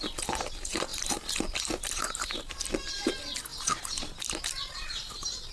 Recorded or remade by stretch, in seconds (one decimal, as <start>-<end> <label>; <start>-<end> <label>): 0.0-3.5 remade; 3.5-4.4 recorded; 4.4-5.5 remade